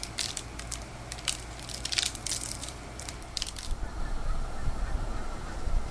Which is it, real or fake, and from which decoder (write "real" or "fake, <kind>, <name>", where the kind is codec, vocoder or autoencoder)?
fake, vocoder, BigVGAN v2